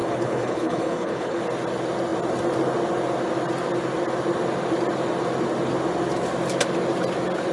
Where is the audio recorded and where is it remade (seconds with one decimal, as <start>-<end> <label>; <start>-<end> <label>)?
0.0-1.4 remade; 1.4-7.5 recorded